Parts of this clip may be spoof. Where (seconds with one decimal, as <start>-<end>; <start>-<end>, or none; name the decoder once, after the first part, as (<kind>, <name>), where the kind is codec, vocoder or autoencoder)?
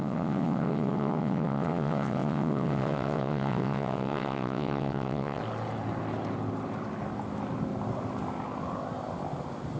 0.0-5.4 (vocoder, WaveNeXt)